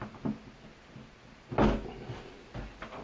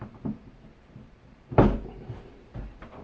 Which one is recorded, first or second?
first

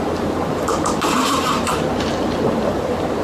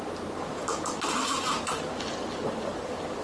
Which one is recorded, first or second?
second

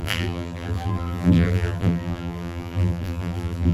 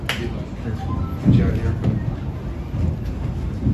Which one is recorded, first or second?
second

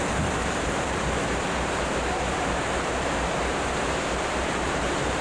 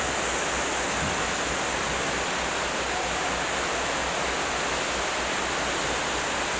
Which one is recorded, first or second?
second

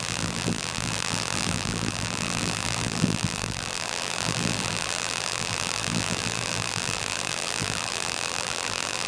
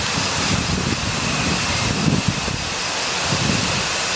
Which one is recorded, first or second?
second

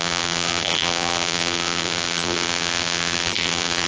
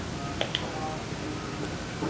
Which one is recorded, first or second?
second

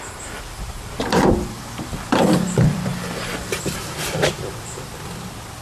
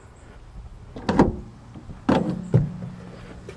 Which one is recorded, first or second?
second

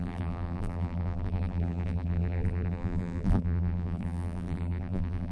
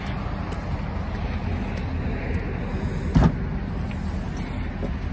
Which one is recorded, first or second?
second